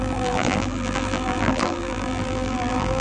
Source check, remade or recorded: remade